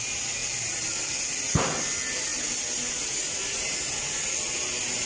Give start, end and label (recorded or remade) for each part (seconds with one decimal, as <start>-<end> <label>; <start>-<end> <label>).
0.0-5.1 recorded